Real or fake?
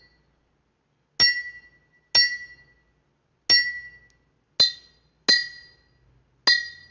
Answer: real